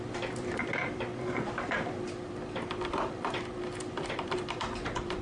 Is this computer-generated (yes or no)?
yes